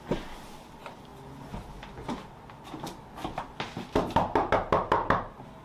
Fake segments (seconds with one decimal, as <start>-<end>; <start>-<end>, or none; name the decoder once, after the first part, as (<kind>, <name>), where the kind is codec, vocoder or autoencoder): none